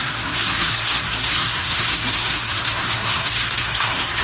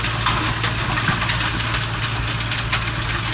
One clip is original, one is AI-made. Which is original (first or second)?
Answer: second